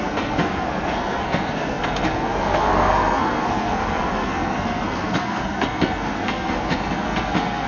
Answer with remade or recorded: remade